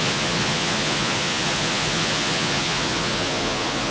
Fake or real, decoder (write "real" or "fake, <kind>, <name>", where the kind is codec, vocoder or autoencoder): fake, vocoder, Vocos